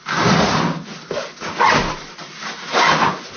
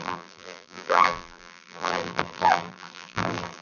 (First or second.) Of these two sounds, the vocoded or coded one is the second